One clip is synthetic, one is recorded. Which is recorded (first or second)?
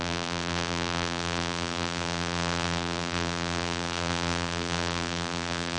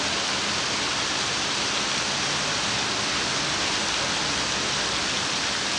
second